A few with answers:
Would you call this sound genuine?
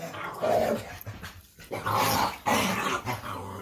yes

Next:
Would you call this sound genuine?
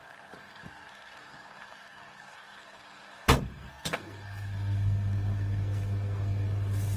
no